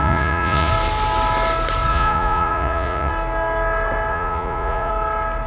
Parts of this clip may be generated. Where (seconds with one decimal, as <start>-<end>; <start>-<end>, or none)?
0.0-0.7; 1.9-3.1; 4.1-4.9